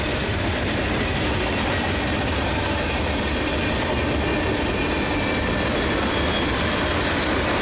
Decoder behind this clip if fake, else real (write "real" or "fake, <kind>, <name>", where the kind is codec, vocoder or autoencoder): real